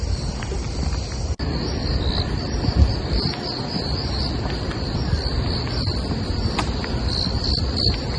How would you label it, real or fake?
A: real